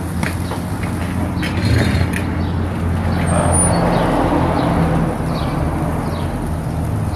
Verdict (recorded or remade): recorded